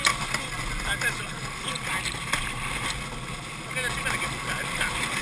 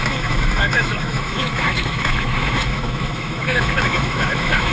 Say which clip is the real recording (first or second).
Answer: first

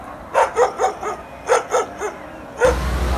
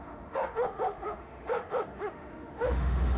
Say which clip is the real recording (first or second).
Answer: first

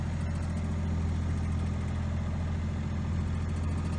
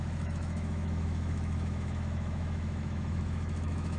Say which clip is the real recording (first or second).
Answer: first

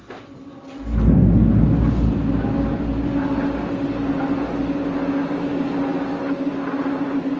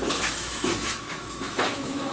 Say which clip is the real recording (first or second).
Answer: first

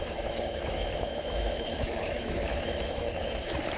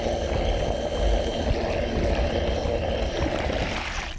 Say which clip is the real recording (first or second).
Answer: second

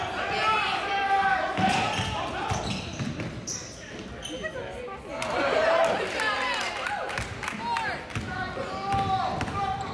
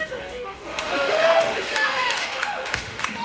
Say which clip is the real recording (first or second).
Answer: first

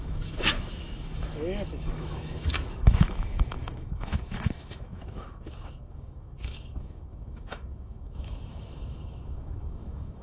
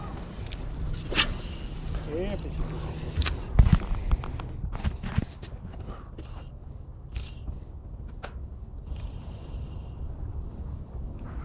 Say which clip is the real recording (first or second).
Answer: second